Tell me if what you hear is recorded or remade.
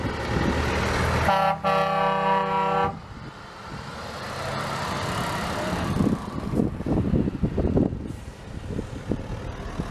recorded